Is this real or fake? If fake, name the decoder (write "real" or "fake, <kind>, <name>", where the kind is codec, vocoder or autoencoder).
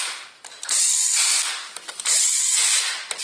real